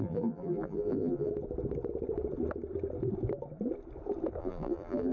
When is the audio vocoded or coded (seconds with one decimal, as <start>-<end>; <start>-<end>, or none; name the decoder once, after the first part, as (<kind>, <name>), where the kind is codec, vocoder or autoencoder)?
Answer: 0.0-1.3 (vocoder, BigVGAN v2); 4.4-5.1